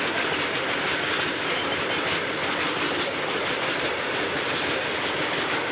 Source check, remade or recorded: recorded